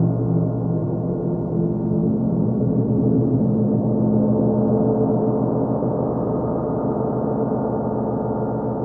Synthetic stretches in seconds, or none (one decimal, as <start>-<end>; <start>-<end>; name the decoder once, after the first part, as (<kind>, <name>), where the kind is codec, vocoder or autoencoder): 0.8-1.6 (vocoder, BigVGAN v2); 2.0-3.8; 5.8-7.7